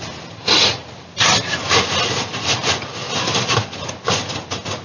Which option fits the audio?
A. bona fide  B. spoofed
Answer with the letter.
A